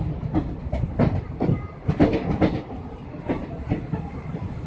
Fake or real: real